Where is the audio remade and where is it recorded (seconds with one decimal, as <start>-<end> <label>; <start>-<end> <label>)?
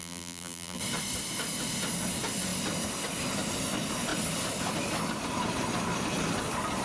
0.0-0.8 remade; 0.8-6.8 recorded